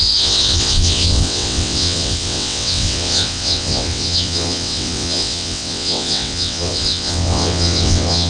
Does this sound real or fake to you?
fake